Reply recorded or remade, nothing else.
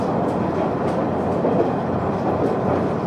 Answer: recorded